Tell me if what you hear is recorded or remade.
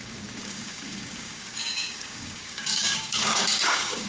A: remade